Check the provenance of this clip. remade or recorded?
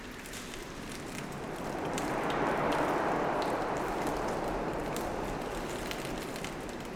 remade